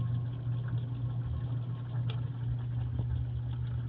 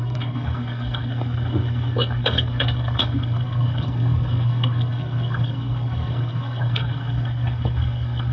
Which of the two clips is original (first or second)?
first